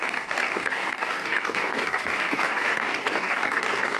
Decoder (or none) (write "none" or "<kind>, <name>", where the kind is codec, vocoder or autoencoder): codec, DAC